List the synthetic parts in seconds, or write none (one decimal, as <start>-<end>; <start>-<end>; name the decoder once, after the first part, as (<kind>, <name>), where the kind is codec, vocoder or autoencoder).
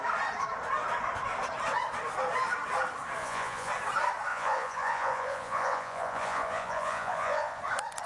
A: 3.2-3.7 (vocoder, Vocos); 4.3-7.6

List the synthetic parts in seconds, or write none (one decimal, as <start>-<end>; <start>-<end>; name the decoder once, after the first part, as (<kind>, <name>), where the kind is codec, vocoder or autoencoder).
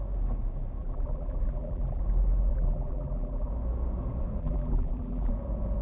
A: 0.8-2.0 (vocoder, BigVGAN v2); 2.5-3.5; 4.4-5.3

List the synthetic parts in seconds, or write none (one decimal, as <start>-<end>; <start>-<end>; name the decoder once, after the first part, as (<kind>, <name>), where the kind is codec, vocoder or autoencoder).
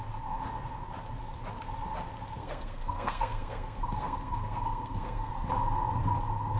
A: 2.4-5.3 (codec, SNAC)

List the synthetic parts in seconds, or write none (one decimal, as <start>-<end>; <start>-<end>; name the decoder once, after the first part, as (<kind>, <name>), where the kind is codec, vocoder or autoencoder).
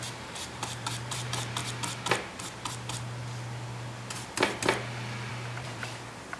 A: 0.0-1.6 (vocoder, BigVGAN v2); 5.3-6.4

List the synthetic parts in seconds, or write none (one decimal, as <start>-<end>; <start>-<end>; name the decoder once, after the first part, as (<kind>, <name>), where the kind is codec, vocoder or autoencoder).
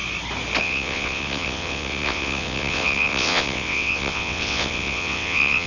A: 0.6-5.7 (vocoder, WaveNeXt)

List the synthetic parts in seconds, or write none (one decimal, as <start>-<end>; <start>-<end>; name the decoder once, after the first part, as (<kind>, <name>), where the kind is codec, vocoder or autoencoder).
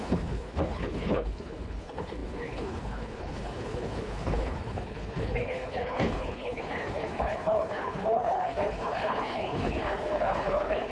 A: 0.0-10.9 (codec, HILCodec)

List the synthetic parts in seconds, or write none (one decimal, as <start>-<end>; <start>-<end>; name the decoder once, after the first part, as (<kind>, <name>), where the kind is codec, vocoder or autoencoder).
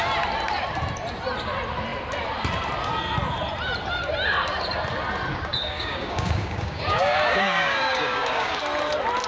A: 5.3-8.6 (codec, DAC)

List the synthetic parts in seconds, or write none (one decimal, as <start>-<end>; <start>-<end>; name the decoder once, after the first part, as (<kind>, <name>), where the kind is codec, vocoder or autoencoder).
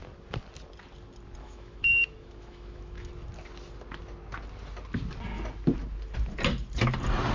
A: 1.4-3.1 (autoencoder, DAC-VAE)